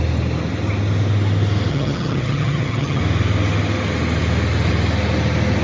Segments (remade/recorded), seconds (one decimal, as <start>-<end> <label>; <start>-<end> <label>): 0.0-1.7 recorded; 1.7-3.0 remade; 3.0-5.6 recorded

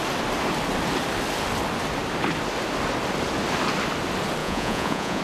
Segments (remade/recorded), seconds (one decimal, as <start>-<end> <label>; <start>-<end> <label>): 0.0-4.4 recorded; 4.4-5.2 remade

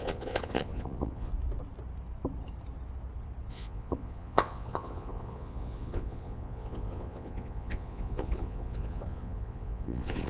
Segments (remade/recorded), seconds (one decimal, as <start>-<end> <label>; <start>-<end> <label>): 0.0-1.3 remade; 1.3-3.5 recorded; 3.5-10.3 remade

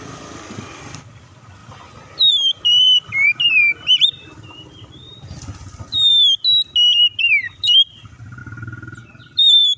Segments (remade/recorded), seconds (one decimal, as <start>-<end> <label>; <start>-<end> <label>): 0.0-1.6 remade; 1.6-2.3 recorded; 2.3-6.1 remade; 6.1-7.1 recorded; 7.1-8.4 remade; 8.4-9.2 recorded; 9.2-9.8 remade

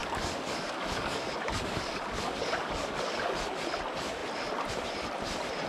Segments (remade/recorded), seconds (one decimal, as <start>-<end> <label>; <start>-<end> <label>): 0.0-3.4 remade; 3.4-5.7 recorded

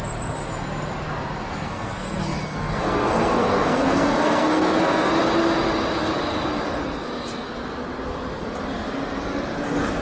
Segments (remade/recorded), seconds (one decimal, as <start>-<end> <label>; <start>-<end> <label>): 0.0-1.5 recorded; 1.5-5.1 remade; 5.1-10.0 recorded

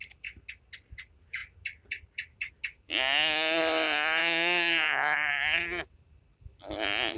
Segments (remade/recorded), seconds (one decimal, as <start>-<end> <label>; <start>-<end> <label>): 0.0-4.2 recorded; 4.2-5.3 remade; 5.3-7.2 recorded

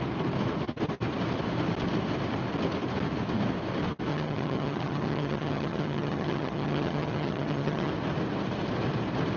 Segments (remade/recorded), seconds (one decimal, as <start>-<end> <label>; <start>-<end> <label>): 0.0-4.1 recorded; 4.1-7.9 remade; 7.9-9.4 recorded